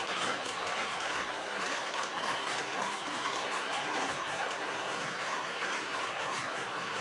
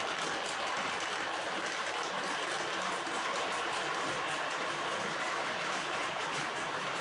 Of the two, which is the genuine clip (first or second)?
second